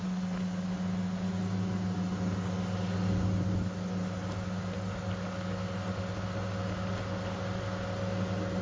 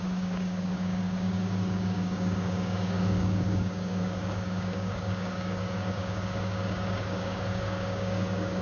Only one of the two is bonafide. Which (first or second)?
first